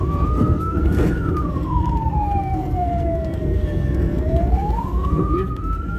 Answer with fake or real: fake